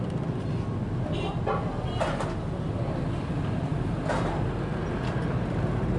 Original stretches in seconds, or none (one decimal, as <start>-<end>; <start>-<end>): 0.0-6.0